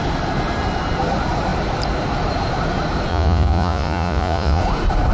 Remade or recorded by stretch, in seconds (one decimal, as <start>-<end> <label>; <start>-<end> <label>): 0.0-3.1 recorded; 3.1-4.6 remade; 4.6-5.1 recorded

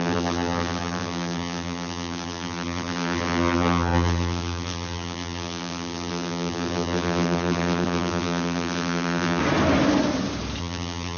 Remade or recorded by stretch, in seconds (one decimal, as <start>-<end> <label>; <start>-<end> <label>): 0.0-9.4 remade; 9.4-10.6 recorded; 10.6-11.2 remade

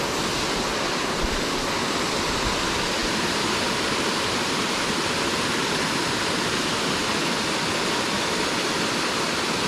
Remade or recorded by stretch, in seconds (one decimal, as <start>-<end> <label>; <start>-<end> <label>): 0.0-3.0 recorded; 3.0-5.0 remade; 5.0-5.6 recorded; 5.6-7.1 remade; 7.1-9.7 recorded

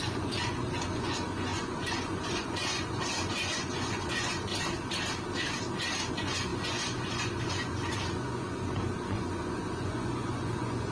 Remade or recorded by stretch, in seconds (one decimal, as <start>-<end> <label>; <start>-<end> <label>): 0.0-4.5 remade; 4.5-6.1 recorded; 6.1-10.9 remade